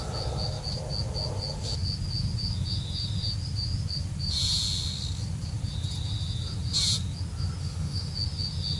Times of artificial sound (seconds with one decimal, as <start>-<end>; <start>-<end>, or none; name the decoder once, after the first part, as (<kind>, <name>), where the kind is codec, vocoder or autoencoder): 7.6-8.1 (autoencoder, DAC-VAE)